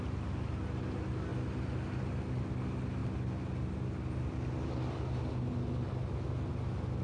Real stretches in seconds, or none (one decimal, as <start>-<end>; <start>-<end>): 0.0-7.0

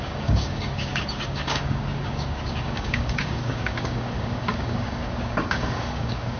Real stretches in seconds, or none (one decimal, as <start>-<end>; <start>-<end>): none

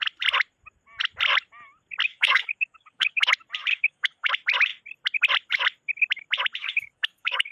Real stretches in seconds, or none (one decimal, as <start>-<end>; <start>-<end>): 0.0-2.1; 3.3-3.7; 4.3-6.6

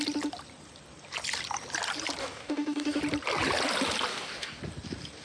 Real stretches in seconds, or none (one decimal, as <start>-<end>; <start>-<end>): 0.0-2.2; 3.0-4.1; 4.6-5.2

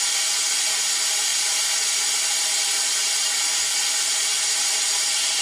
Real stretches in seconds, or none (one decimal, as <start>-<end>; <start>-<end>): 0.0-5.4